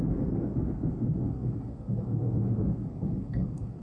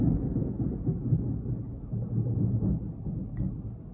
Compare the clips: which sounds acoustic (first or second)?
second